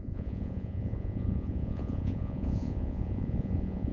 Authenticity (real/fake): fake